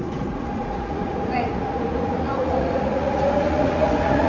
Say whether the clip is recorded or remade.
remade